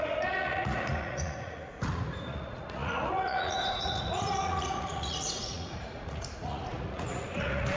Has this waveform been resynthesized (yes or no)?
yes